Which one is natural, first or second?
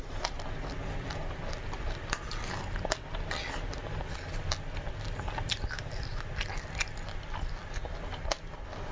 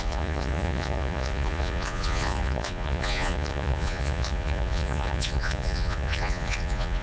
first